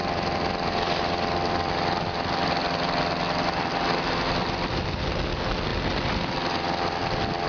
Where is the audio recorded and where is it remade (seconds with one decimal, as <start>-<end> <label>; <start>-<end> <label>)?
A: 0.0-7.5 recorded